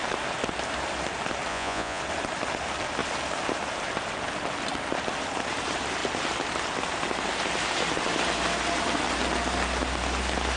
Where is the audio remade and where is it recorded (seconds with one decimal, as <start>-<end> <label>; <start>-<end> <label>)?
0.0-1.5 recorded; 1.5-2.0 remade; 2.0-10.6 recorded